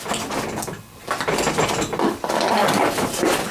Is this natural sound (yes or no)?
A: yes